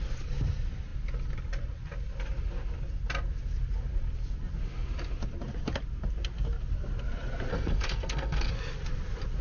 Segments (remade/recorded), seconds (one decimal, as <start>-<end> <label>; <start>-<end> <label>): 0.0-7.5 recorded; 7.5-8.5 remade; 8.5-9.4 recorded